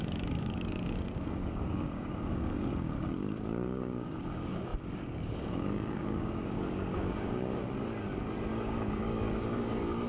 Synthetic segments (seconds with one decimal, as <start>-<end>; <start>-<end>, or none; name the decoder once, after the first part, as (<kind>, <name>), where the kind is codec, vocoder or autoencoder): 0.0-7.6 (codec, DAC); 8.5-10.1